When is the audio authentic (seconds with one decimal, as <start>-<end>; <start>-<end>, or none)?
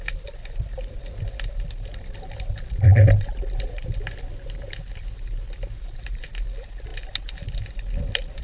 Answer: 0.0-8.4